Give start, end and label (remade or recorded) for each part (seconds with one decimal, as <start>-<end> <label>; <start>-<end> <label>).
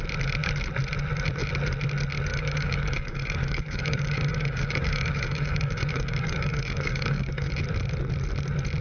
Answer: 0.0-2.3 recorded; 2.3-7.5 remade; 7.5-8.8 recorded